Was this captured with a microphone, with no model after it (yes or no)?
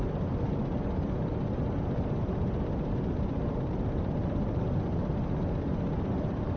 yes